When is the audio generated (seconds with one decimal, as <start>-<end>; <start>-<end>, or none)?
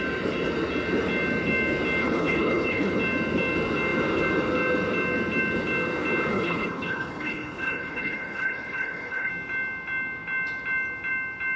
2.0-3.0; 6.3-9.3